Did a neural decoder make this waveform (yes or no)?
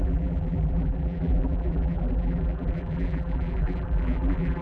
yes